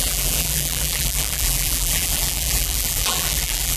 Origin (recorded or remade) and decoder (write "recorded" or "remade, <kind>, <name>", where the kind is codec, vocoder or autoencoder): remade, vocoder, BigVGAN v2